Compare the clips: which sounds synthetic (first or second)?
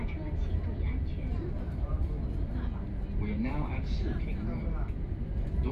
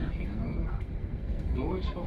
second